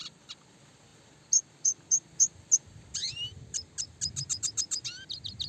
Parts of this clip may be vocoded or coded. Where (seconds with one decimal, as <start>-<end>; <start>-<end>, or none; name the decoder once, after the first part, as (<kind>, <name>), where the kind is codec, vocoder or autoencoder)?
none